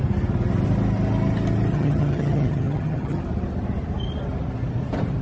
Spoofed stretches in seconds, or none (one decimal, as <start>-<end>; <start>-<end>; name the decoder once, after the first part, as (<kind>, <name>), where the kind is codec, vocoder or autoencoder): 1.7-3.2 (vocoder, HiFi-GAN)